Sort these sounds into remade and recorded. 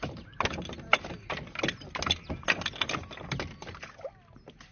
recorded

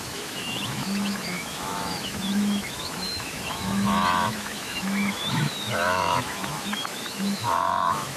remade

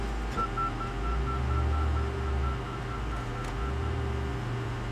recorded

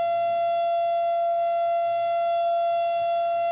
recorded